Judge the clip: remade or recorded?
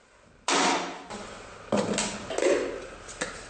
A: recorded